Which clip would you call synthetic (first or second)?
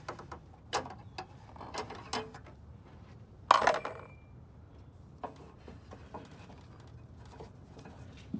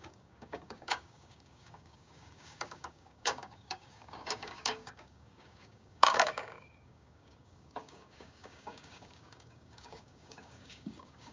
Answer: second